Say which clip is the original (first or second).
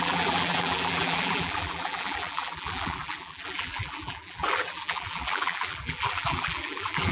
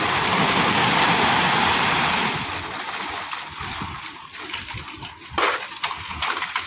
second